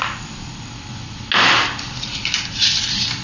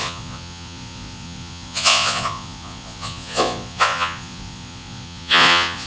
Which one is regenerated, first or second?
second